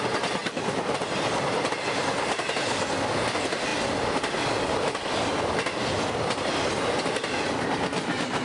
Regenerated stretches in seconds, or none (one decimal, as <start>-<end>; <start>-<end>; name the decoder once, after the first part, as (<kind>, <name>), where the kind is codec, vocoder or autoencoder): 0.4-2.0 (vocoder, BigVGAN v2)